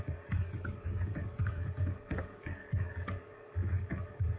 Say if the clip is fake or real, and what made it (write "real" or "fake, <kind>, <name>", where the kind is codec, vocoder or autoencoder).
fake, codec, DAC